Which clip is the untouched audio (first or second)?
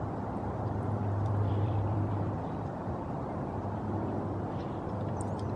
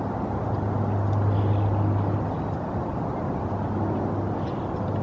second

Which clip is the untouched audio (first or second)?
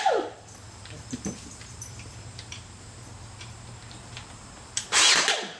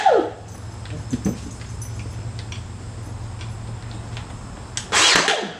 second